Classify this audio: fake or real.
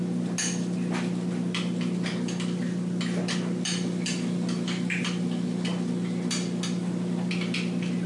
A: real